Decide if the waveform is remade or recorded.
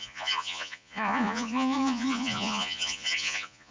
remade